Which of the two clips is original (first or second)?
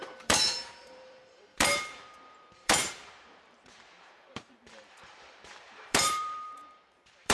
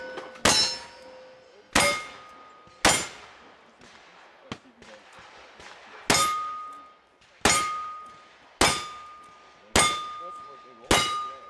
second